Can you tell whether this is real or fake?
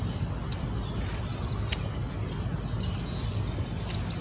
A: real